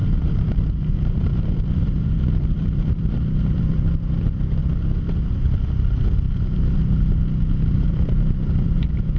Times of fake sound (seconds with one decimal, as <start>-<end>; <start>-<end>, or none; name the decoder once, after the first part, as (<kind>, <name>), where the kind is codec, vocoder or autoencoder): 0.0-4.6 (vocoder, BigVGAN v2); 7.7-9.2

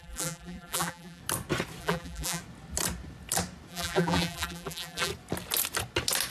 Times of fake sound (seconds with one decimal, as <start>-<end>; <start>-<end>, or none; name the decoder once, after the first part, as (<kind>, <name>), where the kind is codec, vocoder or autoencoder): 0.0-1.2 (vocoder, BigVGAN v2); 1.8-2.4; 3.7-5.1

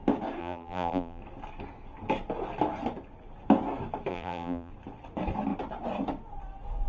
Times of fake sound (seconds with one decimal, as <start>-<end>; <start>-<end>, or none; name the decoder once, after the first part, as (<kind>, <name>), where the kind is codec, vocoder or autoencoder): 0.4-1.2 (vocoder, BigVGAN v2); 4.1-4.7

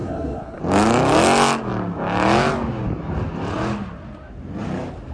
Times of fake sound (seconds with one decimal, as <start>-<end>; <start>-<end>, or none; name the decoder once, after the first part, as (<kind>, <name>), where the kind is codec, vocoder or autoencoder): 0.0-0.6 (codec, SNAC)

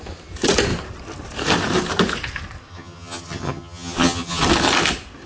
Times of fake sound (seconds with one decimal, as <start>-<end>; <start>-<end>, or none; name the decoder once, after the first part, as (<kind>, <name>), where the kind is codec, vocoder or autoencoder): 2.7-4.4 (vocoder, HiFi-GAN)